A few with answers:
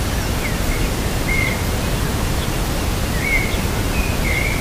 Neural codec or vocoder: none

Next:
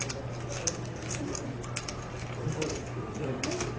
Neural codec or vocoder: none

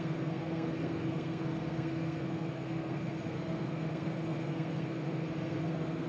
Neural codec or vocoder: codec, SNAC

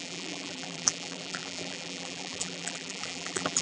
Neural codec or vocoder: vocoder, BigVGAN v2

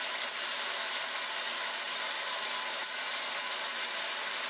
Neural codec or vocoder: vocoder, BigVGAN v2